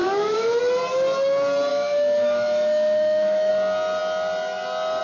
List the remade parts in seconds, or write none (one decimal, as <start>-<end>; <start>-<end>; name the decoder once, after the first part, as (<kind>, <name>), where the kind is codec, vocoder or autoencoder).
0.0-0.6 (autoencoder, DAC-VAE); 1.7-3.5